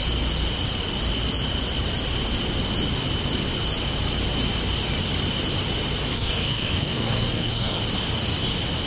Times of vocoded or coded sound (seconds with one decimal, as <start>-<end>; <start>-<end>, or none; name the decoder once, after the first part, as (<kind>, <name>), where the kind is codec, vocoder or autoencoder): 6.1-7.8 (codec, SNAC)